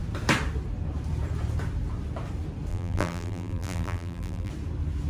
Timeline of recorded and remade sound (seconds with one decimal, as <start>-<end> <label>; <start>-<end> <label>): 0.0-2.7 recorded; 2.7-4.5 remade; 4.5-5.1 recorded